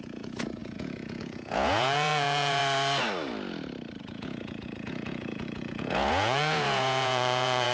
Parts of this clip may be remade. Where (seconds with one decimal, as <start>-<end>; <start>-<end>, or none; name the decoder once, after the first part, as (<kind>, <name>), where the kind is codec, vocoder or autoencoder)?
0.0-2.6 (vocoder, Vocos); 4.0-7.7